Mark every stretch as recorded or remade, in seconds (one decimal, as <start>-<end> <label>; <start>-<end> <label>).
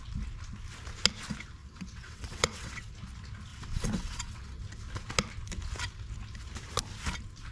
0.0-1.6 recorded; 1.6-2.9 remade; 2.9-3.5 recorded; 3.5-4.6 remade; 4.6-7.5 recorded